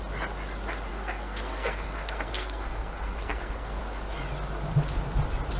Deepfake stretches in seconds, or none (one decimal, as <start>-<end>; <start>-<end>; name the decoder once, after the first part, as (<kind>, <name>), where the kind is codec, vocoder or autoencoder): 0.9-3.8 (codec, SNAC)

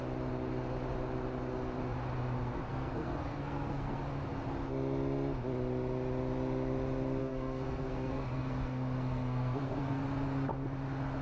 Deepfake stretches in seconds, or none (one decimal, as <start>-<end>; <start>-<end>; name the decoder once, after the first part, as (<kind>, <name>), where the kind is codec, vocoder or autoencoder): 2.4-4.0 (codec, SNAC); 7.2-10.0

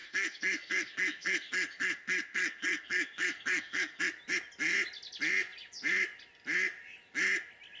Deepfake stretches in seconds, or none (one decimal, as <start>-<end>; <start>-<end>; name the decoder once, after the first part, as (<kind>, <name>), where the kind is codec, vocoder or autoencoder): 0.0-4.0 (codec, SNAC)

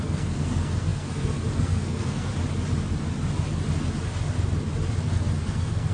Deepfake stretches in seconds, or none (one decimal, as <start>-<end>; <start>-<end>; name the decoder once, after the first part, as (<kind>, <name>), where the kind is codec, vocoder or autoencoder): 0.0-2.3 (codec, SNAC); 5.4-5.9